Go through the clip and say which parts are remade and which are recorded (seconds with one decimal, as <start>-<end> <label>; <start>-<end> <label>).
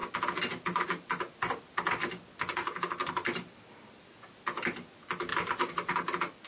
0.0-6.5 recorded